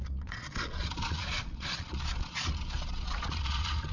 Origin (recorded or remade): remade